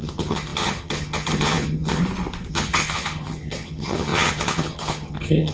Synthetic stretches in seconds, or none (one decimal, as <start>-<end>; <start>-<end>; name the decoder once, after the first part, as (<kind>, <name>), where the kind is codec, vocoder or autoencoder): 0.0-2.0 (vocoder, HiFi-GAN); 2.5-5.5